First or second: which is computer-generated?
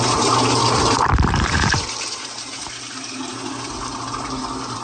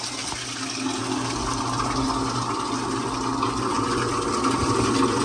first